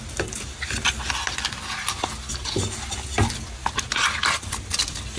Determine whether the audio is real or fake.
real